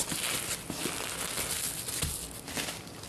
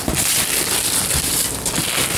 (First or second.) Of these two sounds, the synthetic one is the second